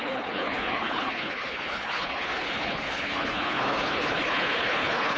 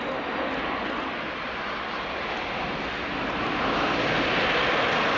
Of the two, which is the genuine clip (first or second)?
second